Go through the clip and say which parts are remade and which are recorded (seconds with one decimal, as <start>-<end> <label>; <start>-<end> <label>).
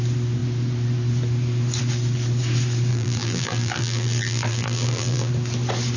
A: 0.0-2.9 recorded; 2.9-5.3 remade; 5.3-6.0 recorded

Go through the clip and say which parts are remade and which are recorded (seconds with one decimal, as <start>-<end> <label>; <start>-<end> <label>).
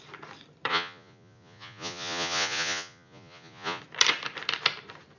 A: 0.0-0.7 recorded; 0.7-3.8 remade; 3.8-5.2 recorded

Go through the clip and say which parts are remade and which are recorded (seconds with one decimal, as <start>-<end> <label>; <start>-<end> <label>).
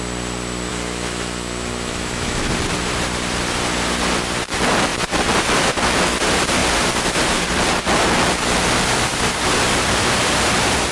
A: 0.0-0.7 recorded; 0.7-2.5 remade; 2.5-10.9 recorded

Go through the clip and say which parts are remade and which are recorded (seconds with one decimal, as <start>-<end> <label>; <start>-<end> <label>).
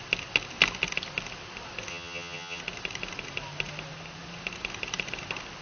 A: 0.0-1.9 recorded; 1.9-2.6 remade; 2.6-5.6 recorded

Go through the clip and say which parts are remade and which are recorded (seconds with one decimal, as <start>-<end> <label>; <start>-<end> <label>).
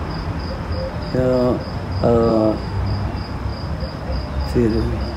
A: 0.0-2.3 recorded; 2.3-2.8 remade; 2.8-5.2 recorded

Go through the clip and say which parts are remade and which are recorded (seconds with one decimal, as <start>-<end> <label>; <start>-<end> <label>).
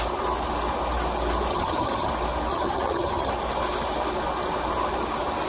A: 0.0-1.5 recorded; 1.5-2.1 remade; 2.1-2.5 recorded; 2.5-3.3 remade; 3.3-5.5 recorded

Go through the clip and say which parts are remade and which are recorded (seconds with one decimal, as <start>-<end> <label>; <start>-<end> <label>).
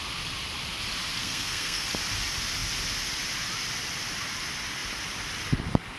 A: 0.0-1.2 recorded; 1.2-1.9 remade; 1.9-6.0 recorded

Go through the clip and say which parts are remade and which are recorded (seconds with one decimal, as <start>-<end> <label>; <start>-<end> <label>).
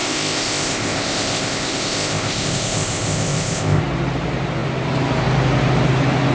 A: 0.0-3.8 remade; 3.8-6.3 recorded